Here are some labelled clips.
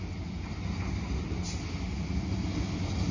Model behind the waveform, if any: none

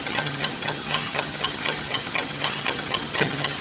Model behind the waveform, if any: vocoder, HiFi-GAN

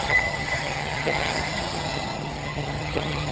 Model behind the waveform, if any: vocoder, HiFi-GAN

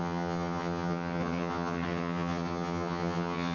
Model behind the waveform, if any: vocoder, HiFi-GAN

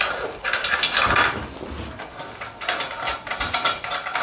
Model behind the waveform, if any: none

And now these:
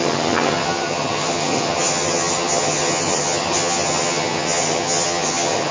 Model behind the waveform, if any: vocoder, HiFi-GAN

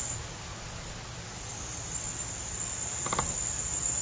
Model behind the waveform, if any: none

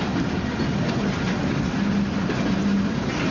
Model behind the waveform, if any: none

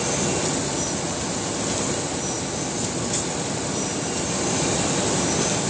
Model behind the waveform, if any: none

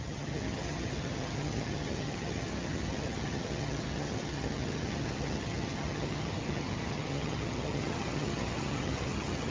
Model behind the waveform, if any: vocoder, HiFi-GAN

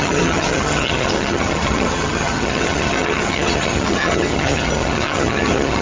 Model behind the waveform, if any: vocoder, HiFi-GAN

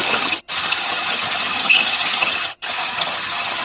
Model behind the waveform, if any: vocoder, HiFi-GAN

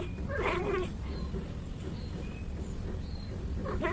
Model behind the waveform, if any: none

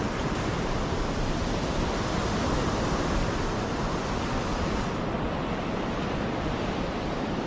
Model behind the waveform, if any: none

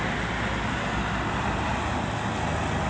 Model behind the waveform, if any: none